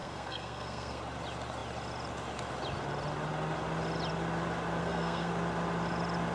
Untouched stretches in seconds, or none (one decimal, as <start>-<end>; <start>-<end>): 1.0-4.8; 5.3-6.3